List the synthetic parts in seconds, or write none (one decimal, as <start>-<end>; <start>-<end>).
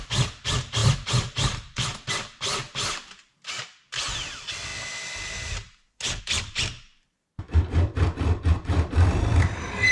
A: 0.0-4.7; 6.2-9.9